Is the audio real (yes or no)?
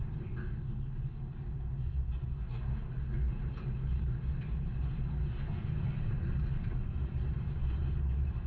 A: yes